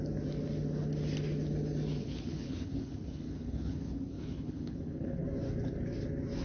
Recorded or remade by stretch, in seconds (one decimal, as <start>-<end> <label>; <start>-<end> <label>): 0.0-2.0 recorded; 2.0-5.2 remade; 5.2-6.4 recorded